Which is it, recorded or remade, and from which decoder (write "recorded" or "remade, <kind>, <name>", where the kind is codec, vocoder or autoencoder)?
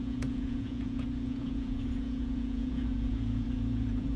remade, vocoder, Vocos